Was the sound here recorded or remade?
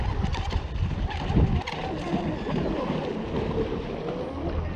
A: recorded